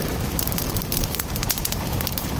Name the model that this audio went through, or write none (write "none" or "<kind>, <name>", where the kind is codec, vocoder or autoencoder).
vocoder, BigVGAN v2